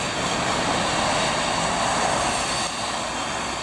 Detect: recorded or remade recorded